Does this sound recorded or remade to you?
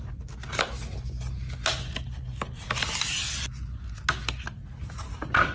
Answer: recorded